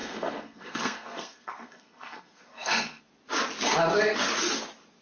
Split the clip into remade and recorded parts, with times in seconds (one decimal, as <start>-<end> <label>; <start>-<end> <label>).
0.0-3.0 remade; 3.0-5.0 recorded